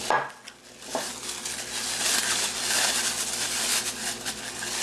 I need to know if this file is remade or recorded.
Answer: recorded